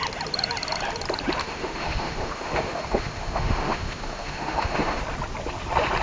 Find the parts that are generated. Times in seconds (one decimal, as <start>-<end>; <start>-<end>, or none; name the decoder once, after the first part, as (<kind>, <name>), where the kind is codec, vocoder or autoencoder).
1.4-5.0 (autoencoder, DAC-VAE)